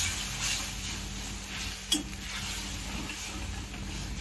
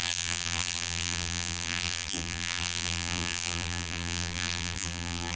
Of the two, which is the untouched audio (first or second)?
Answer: first